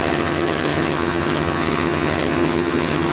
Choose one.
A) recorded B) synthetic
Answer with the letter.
B